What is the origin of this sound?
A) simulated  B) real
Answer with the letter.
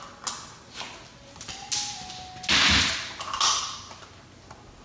B